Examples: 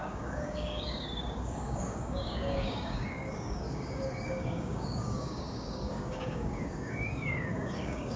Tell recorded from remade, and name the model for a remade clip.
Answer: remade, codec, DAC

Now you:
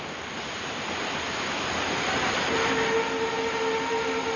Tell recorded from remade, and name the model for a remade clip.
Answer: recorded